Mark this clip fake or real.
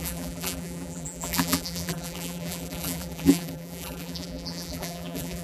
fake